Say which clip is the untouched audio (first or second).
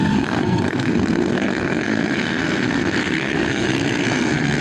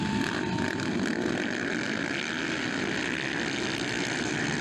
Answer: second